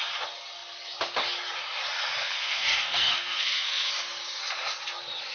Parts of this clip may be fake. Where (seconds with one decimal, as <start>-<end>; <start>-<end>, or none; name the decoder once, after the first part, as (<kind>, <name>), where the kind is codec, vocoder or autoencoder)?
2.2-3.9 (codec, SNAC)